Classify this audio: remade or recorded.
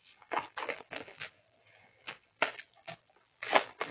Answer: remade